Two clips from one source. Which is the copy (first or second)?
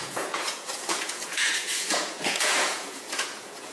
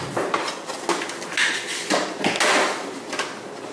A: first